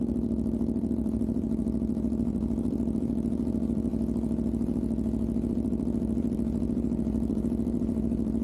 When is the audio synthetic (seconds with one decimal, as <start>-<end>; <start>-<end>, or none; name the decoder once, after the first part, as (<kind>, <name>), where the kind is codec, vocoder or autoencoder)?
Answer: 0.0-3.9 (vocoder, BigVGAN v2); 5.5-8.4